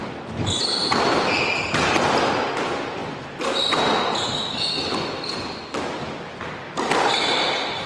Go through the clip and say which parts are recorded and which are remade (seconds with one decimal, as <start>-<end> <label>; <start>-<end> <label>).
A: 0.0-7.9 recorded